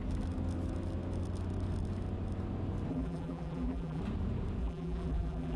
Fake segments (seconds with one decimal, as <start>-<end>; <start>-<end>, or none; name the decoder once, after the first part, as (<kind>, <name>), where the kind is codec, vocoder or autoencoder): 2.9-4.0 (vocoder, BigVGAN v2); 4.6-5.6